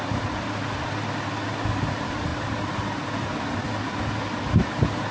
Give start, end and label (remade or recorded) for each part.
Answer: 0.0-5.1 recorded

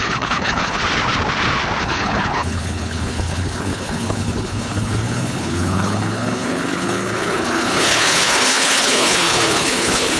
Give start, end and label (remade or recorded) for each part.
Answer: 0.0-0.8 remade; 0.8-1.8 recorded; 1.8-10.2 remade

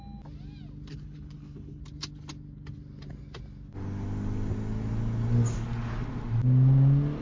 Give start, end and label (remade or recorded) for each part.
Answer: 0.0-0.9 recorded; 0.9-1.8 remade; 1.8-7.2 recorded

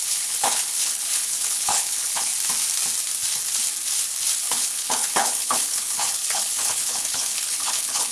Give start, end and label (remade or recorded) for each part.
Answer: 0.0-2.3 remade; 2.3-4.4 recorded; 4.4-8.1 remade

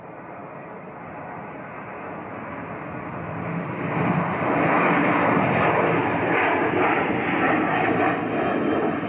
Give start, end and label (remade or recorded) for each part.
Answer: 0.0-9.1 recorded

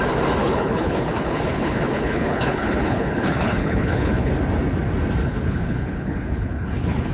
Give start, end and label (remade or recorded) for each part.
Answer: 0.0-0.4 recorded; 0.4-4.3 remade; 4.3-5.2 recorded; 5.2-7.1 remade

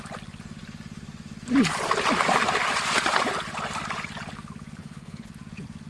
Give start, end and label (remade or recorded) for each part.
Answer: 0.0-4.8 recorded; 4.8-5.3 remade; 5.3-5.9 recorded